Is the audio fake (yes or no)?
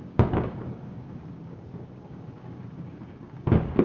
yes